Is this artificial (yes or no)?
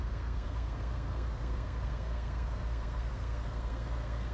yes